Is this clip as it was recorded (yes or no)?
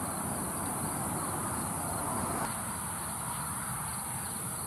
no